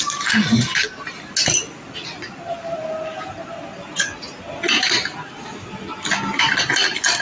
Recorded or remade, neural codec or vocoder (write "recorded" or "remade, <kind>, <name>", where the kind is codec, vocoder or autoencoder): recorded